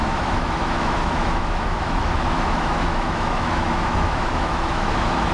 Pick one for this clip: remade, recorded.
remade